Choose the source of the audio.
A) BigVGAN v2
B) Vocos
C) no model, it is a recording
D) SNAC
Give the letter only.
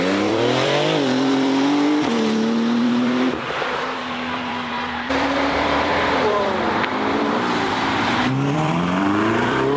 A